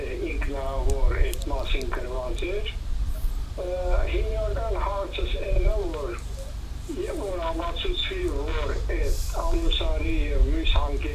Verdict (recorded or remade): remade